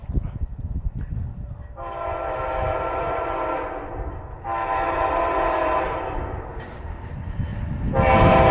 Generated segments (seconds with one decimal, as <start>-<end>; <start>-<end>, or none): none